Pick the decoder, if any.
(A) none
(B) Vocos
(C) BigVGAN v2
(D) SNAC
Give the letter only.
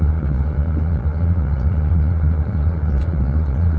B